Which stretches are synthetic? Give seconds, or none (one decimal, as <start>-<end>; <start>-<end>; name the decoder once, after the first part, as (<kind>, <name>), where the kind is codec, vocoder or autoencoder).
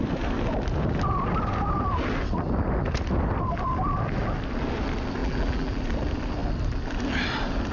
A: 5.2-5.8 (vocoder, BigVGAN v2)